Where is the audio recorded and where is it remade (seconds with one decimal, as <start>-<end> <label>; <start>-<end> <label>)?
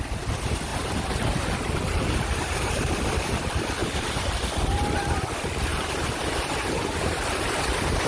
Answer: 0.0-0.7 recorded; 0.7-2.9 remade; 2.9-3.8 recorded; 3.8-4.4 remade; 4.4-5.7 recorded; 5.7-8.1 remade